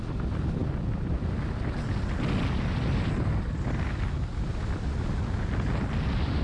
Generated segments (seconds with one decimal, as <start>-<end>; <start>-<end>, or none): none